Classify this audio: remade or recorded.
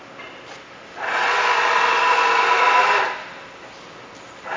recorded